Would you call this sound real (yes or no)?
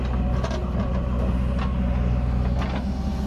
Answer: yes